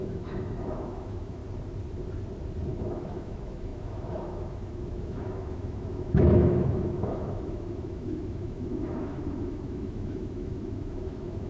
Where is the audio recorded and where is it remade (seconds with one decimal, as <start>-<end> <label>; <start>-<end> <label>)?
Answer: 0.0-1.4 remade; 1.4-2.7 recorded; 2.7-11.5 remade